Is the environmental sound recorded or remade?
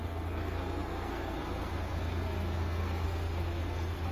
remade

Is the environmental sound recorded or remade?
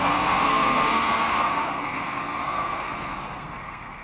remade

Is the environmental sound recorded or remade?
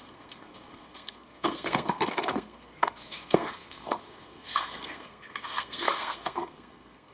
remade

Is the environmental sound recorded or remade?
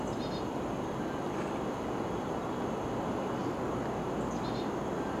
recorded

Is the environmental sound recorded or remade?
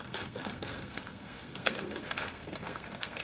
remade